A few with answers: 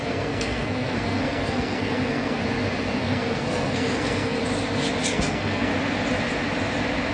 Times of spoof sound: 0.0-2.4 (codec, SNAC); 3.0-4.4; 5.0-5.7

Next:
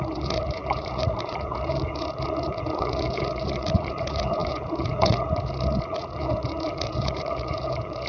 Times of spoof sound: 0.0-8.1 (vocoder, Vocos)

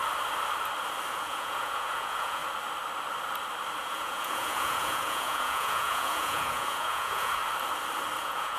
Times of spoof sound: 1.1-2.4 (vocoder, Vocos); 3.8-7.4; 8.2-8.6

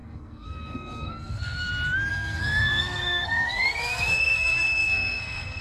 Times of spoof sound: 0.0-1.7 (codec, SNAC); 2.1-5.6